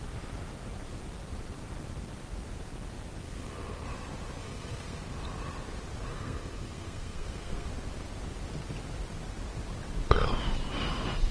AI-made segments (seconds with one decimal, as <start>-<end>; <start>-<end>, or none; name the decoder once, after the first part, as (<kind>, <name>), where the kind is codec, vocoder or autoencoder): 3.2-3.8 (codec, SNAC); 4.4-5.0; 6.1-7.7